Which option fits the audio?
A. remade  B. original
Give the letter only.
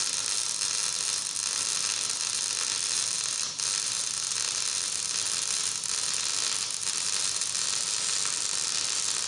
B